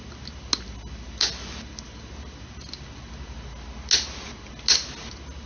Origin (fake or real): real